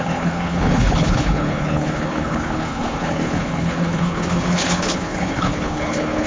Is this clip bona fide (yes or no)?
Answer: no